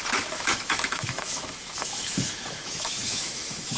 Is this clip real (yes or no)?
no